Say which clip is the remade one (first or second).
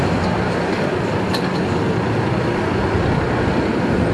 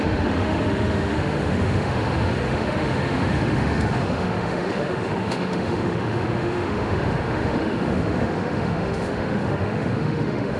second